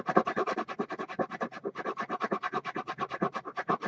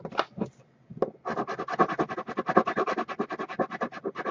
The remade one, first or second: first